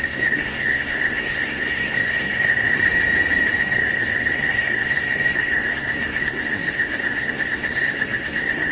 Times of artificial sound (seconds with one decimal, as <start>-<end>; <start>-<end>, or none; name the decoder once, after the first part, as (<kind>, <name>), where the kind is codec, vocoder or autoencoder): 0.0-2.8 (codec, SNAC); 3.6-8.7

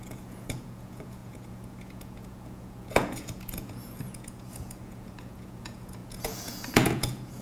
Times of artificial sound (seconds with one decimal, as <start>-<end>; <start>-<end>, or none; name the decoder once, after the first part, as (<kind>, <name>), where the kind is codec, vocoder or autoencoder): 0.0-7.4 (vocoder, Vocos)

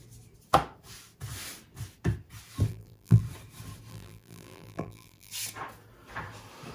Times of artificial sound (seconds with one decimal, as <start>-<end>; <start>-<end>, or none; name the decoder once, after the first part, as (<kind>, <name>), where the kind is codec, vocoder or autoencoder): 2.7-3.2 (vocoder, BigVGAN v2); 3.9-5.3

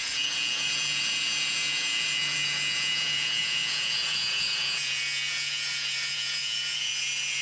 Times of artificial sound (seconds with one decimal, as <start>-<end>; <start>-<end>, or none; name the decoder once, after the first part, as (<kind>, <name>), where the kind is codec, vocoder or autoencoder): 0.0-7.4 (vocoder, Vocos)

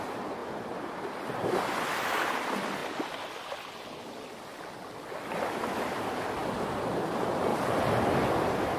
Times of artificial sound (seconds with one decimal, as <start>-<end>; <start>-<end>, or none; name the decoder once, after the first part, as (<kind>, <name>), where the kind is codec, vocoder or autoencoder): none

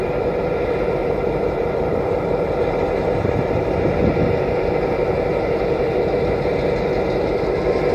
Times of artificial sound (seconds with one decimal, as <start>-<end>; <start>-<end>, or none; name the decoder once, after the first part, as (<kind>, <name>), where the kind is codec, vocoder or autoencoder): 1.0-3.9 (vocoder, BigVGAN v2)

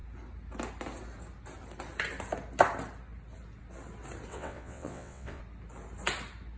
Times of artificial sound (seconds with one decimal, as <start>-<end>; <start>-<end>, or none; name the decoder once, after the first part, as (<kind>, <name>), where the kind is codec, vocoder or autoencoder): 4.3-5.4 (vocoder, WaveNeXt)

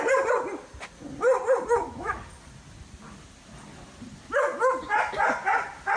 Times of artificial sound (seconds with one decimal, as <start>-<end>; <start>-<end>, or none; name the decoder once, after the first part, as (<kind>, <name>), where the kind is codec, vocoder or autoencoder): 1.8-2.3 (autoencoder, DAC-VAE)